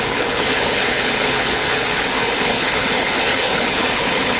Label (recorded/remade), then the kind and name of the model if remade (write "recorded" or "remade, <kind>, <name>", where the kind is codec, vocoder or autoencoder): remade, codec, HILCodec